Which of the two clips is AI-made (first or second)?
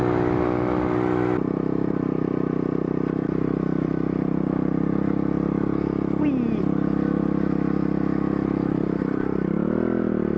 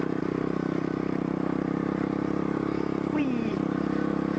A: second